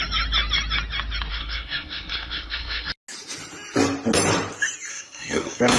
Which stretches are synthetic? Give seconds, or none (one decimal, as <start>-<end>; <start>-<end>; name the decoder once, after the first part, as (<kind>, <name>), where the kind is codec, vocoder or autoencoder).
1.3-2.9 (codec, SNAC); 4.9-5.8